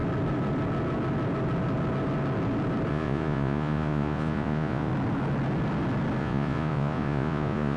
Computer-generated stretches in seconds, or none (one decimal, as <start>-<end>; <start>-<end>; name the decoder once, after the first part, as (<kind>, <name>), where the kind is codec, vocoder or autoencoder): 2.9-4.9 (vocoder, Vocos); 6.2-7.8